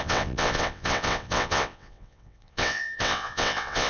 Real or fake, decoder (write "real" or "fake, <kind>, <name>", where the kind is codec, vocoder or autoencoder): fake, vocoder, WaveNeXt